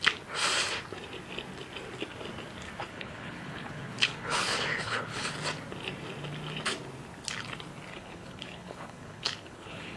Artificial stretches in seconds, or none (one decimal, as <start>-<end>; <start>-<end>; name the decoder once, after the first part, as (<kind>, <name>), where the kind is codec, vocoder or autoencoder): 2.8-5.2 (codec, HILCodec); 7.9-10.0